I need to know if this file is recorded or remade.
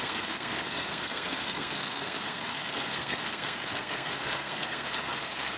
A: remade